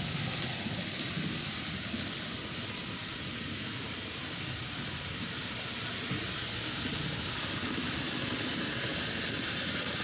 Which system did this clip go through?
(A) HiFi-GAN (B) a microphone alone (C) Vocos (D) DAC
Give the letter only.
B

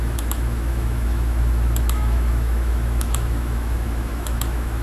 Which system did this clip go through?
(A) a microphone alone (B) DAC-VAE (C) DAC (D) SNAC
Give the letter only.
B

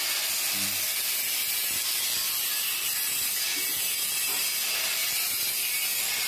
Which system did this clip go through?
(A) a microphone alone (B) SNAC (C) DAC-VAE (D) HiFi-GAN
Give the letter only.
A